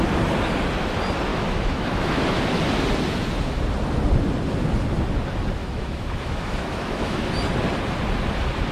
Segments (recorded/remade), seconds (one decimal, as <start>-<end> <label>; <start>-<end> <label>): 0.0-1.3 recorded; 1.3-2.4 remade; 2.4-5.6 recorded; 5.6-7.3 remade; 7.3-8.7 recorded